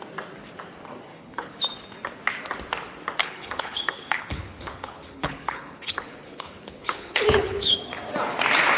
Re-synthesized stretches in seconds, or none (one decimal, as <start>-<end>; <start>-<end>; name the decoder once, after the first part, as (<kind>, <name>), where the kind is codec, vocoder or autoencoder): 1.1-1.6 (codec, HILCodec); 3.2-7.9